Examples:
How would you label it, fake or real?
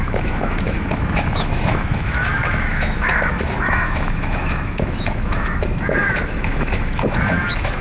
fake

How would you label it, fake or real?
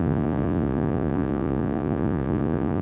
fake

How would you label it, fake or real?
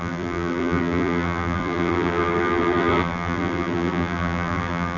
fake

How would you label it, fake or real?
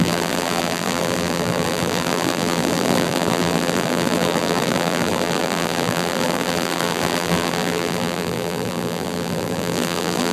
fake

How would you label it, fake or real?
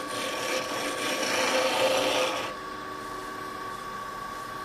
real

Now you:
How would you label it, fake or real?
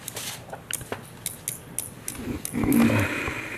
real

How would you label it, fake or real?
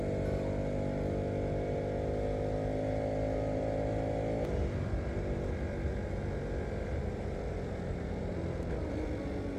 real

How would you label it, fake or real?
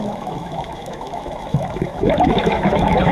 fake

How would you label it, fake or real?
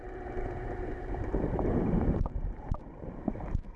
fake